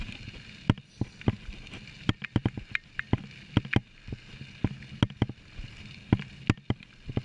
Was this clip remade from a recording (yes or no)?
no